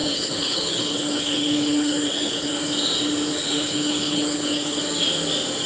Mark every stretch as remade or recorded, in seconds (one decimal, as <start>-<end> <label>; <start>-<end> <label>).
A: 0.0-2.6 remade; 2.6-3.3 recorded; 3.3-4.8 remade; 4.8-5.7 recorded